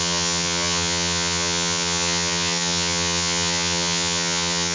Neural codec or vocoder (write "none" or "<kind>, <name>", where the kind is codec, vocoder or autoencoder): vocoder, HiFi-GAN